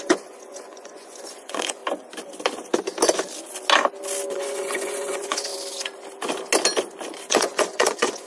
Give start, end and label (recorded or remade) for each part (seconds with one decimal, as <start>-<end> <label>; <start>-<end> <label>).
0.0-1.8 remade; 1.8-4.3 recorded; 4.3-5.5 remade; 5.5-7.3 recorded; 7.3-8.3 remade